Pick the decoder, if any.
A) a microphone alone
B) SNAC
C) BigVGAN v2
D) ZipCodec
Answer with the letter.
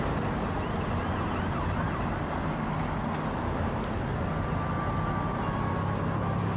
A